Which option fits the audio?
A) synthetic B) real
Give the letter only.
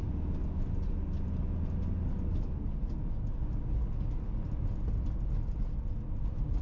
B